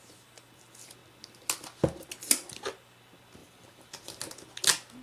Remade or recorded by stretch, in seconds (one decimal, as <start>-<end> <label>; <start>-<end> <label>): 0.0-3.4 recorded; 3.4-4.2 remade; 4.2-5.0 recorded